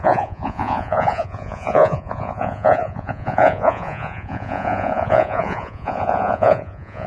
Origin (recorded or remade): remade